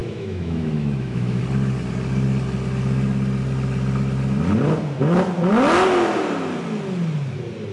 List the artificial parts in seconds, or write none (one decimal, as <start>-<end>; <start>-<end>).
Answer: 0.0-1.4